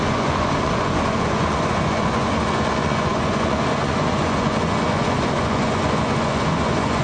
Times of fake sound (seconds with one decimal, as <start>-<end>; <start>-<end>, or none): 0.0-7.0